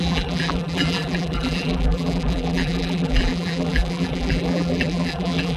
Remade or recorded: remade